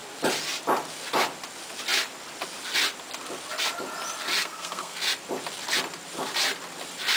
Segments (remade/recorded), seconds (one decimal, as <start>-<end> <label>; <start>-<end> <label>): 0.0-4.4 recorded; 4.4-5.0 remade; 5.0-7.2 recorded